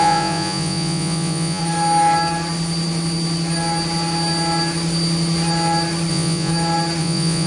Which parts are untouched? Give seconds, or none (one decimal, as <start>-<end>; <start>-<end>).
1.6-6.1; 6.5-7.0